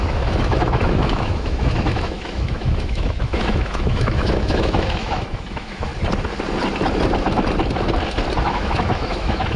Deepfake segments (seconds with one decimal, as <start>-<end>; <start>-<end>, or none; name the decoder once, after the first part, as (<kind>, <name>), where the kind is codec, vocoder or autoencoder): 0.0-5.9 (autoencoder, DAC-VAE); 8.4-9.6